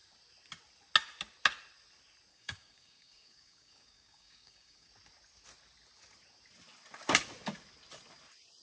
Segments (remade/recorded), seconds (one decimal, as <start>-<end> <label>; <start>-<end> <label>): 0.0-2.3 recorded; 2.3-4.9 remade; 4.9-8.6 recorded